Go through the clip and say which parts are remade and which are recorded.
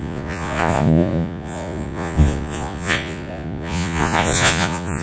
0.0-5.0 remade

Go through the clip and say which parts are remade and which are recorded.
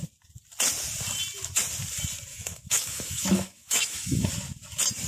0.0-2.3 recorded; 2.3-4.3 remade; 4.3-5.1 recorded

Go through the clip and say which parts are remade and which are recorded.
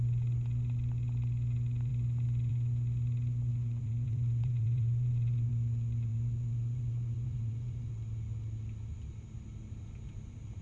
0.0-3.5 recorded; 3.5-5.5 remade; 5.5-6.1 recorded; 6.1-7.9 remade; 7.9-10.6 recorded